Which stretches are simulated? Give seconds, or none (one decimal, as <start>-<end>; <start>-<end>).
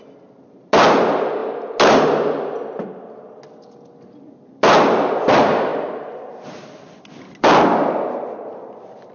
none